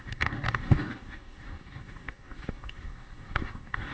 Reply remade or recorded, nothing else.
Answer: remade